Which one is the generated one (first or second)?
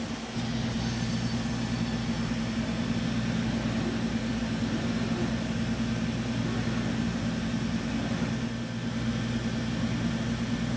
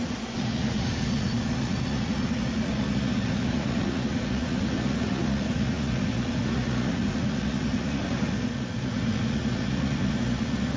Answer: second